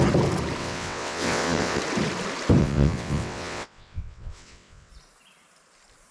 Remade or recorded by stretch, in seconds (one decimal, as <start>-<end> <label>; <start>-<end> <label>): 0.0-0.6 recorded; 0.6-1.8 remade; 1.8-2.6 recorded; 2.6-4.9 remade; 4.9-6.1 recorded